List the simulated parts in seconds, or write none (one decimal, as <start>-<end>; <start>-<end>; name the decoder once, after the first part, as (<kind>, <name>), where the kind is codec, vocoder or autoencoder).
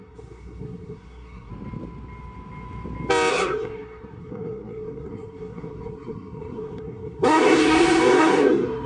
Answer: 0.0-1.5 (codec, SNAC); 3.3-8.9